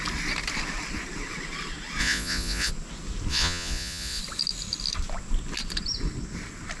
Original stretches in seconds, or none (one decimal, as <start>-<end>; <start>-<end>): 0.0-2.0; 2.7-3.3; 4.2-6.8